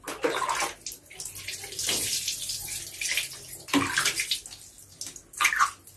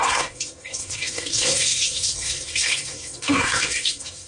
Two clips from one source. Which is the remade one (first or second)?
second